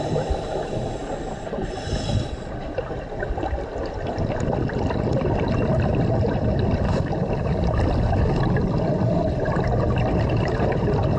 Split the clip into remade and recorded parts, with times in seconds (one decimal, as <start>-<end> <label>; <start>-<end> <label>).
0.0-11.2 remade